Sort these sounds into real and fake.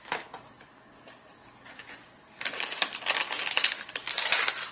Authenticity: real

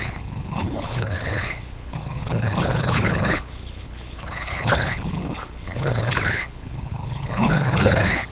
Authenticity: fake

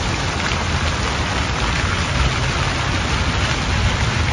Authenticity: real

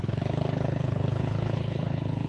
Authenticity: fake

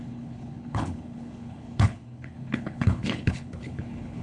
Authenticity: fake